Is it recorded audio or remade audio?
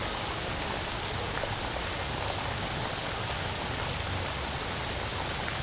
recorded